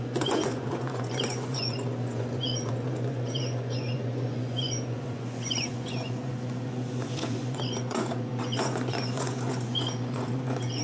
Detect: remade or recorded remade